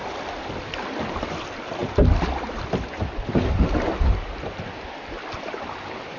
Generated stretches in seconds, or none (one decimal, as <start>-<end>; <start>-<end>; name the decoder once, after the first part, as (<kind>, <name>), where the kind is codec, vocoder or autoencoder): none